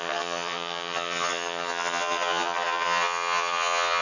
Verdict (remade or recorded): remade